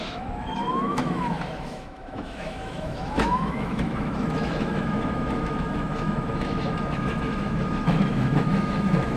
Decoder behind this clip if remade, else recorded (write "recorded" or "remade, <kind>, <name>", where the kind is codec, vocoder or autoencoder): remade, autoencoder, DAC-VAE